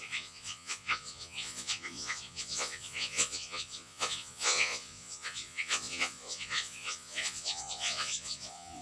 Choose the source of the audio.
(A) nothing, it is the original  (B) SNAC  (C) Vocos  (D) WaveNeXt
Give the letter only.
C